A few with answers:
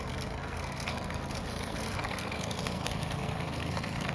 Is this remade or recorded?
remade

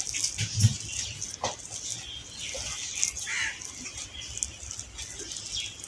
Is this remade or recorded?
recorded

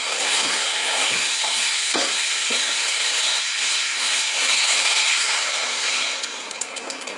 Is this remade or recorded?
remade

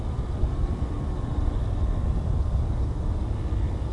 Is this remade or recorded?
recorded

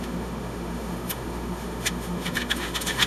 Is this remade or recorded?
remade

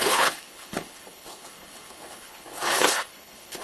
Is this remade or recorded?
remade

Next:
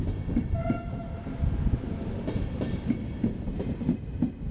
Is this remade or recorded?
recorded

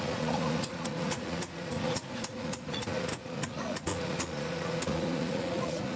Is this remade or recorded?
remade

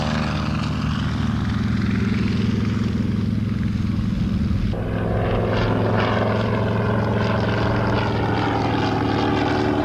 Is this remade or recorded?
recorded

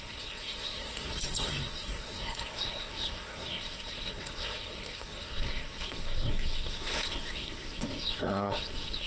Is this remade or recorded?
remade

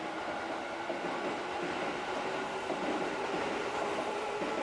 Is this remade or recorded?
recorded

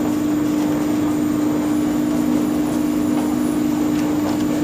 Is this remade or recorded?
recorded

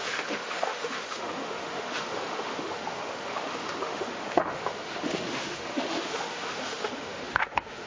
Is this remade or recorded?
remade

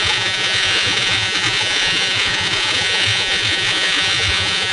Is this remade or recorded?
remade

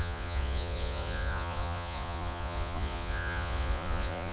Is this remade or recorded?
remade